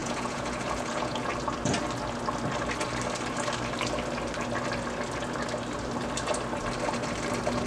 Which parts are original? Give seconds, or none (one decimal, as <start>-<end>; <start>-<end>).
1.3-7.7